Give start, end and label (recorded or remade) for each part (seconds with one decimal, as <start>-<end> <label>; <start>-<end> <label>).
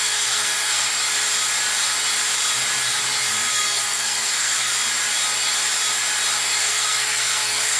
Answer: 0.0-0.9 remade; 0.9-3.5 recorded; 3.5-4.7 remade; 4.7-6.6 recorded; 6.6-7.8 remade